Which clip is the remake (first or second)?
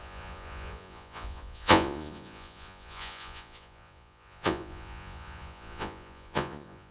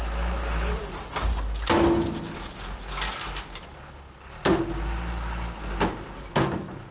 first